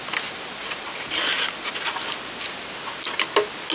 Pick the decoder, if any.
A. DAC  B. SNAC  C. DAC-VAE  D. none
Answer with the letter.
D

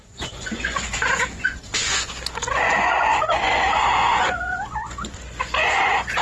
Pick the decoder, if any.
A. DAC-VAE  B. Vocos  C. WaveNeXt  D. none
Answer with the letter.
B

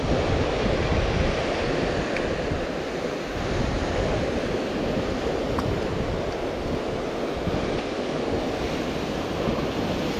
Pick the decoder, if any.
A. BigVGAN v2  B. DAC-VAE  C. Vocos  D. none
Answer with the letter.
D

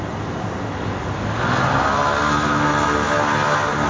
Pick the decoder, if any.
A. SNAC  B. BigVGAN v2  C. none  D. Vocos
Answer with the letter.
C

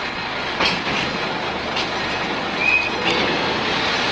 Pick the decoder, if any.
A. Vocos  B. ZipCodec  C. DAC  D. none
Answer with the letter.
D